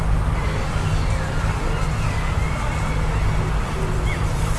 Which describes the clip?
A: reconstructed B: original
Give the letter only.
B